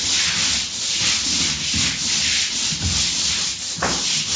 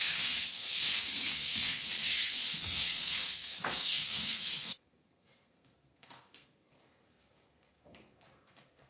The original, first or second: first